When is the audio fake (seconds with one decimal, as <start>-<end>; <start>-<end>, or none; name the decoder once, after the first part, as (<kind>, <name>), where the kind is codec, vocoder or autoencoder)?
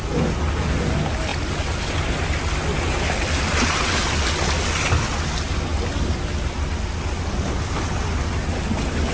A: none